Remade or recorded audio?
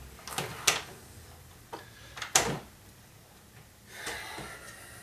recorded